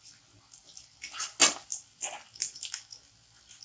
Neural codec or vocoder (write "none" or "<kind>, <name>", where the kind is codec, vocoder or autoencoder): none